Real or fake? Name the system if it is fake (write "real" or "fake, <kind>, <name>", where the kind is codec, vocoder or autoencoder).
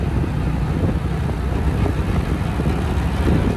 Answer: real